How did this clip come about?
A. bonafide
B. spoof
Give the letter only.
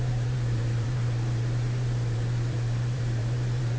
B